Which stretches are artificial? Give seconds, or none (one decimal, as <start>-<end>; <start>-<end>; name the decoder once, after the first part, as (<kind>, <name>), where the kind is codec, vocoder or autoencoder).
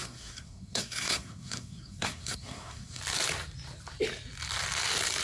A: 0.0-3.0 (codec, SNAC)